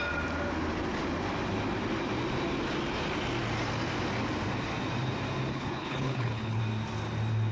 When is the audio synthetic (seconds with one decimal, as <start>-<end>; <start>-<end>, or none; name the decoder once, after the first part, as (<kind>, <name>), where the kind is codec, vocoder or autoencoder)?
5.5-6.6 (codec, HILCodec)